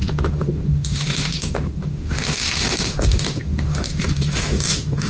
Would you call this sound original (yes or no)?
no